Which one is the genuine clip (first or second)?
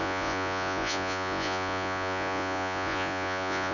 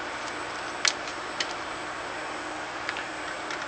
second